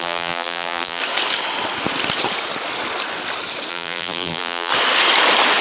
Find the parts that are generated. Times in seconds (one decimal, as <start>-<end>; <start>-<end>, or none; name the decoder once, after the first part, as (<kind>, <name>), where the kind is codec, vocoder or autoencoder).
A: 0.0-1.0 (vocoder, BigVGAN v2); 3.7-4.7